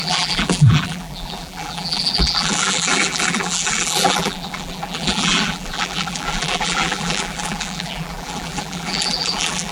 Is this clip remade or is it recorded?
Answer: remade